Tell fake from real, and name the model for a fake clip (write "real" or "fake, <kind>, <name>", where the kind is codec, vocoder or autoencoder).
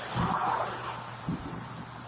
real